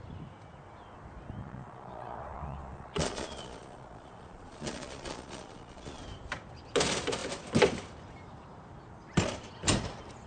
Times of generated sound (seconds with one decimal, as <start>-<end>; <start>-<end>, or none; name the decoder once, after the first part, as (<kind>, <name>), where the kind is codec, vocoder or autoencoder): 1.4-6.0 (vocoder, Vocos)